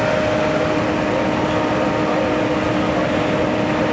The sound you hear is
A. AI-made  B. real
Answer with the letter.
B